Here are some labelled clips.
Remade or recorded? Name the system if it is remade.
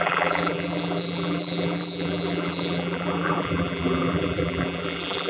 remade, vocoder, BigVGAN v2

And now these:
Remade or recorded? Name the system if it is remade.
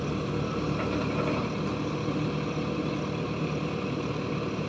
recorded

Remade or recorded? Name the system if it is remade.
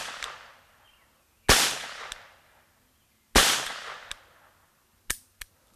recorded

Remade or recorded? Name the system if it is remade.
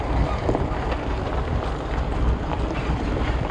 recorded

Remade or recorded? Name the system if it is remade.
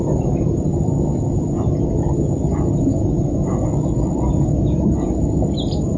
recorded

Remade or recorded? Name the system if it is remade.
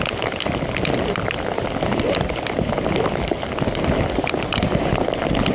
recorded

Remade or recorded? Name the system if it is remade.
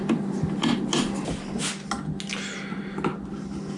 recorded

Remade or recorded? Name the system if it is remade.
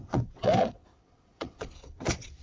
remade, vocoder, WaveNeXt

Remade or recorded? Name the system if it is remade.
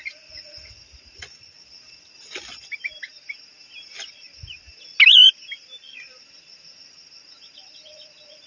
recorded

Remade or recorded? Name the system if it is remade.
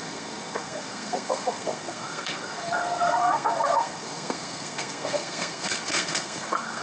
remade, codec, SNAC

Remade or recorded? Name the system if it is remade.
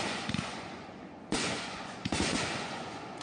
remade, vocoder, Vocos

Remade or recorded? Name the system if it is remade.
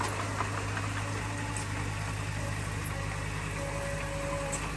recorded